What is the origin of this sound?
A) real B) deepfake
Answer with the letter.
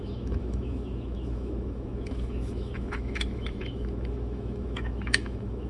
B